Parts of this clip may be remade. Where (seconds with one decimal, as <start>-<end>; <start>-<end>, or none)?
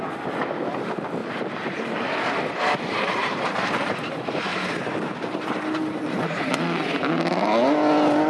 1.2-4.1; 4.5-6.4